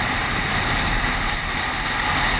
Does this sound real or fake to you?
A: real